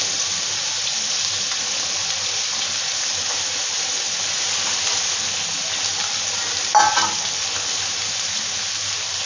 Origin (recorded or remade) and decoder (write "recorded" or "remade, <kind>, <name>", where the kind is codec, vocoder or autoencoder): recorded